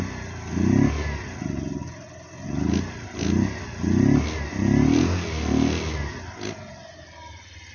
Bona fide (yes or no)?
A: yes